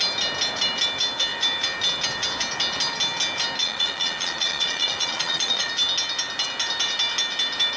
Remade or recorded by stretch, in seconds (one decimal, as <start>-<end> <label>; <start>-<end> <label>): 0.0-3.6 recorded; 3.6-5.7 remade; 5.7-7.8 recorded